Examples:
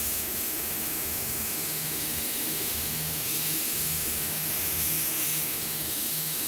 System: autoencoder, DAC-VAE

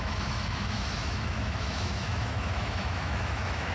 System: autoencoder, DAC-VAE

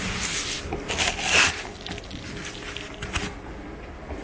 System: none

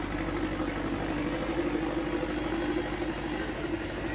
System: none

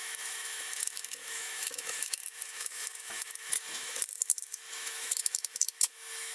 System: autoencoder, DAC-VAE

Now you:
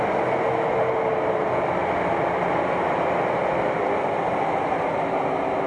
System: none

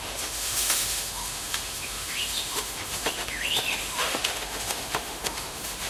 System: autoencoder, DAC-VAE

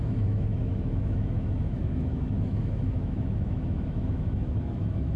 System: autoencoder, DAC-VAE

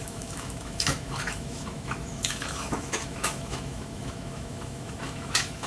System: autoencoder, DAC-VAE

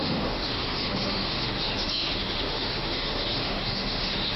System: autoencoder, DAC-VAE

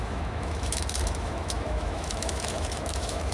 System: autoencoder, DAC-VAE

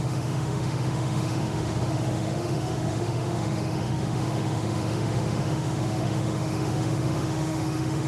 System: autoencoder, DAC-VAE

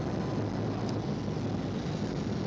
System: none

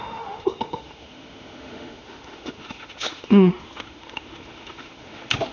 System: autoencoder, DAC-VAE